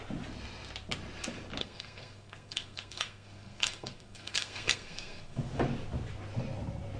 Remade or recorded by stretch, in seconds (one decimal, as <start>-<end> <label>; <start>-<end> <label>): 0.0-1.6 recorded; 1.6-5.4 remade; 5.4-7.0 recorded

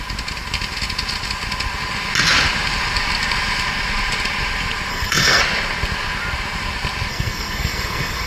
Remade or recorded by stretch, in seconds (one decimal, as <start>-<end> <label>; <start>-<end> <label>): 0.0-4.9 recorded; 4.9-5.4 remade; 5.4-7.1 recorded; 7.1-8.3 remade

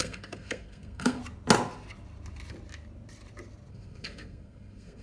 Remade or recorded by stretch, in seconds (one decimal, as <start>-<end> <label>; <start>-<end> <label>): 0.0-1.2 remade; 1.2-3.7 recorded; 3.7-5.0 remade

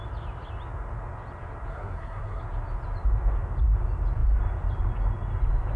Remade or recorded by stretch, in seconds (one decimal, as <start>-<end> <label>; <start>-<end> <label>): 0.0-1.7 recorded; 1.7-2.4 remade; 2.4-5.8 recorded

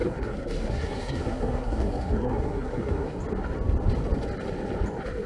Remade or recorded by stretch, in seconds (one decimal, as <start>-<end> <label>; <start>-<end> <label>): 0.0-3.2 remade; 3.2-5.3 recorded

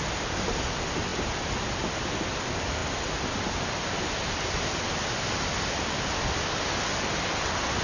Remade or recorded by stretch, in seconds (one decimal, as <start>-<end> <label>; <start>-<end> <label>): 0.0-7.8 recorded

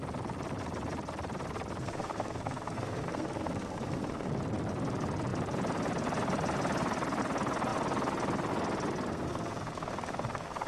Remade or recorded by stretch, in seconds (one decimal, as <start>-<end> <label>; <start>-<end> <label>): 0.0-1.8 recorded; 1.8-4.3 remade; 4.3-9.1 recorded; 9.1-10.7 remade

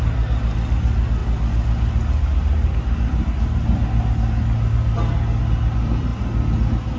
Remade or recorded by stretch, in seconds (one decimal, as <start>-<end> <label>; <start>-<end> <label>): 0.0-7.0 recorded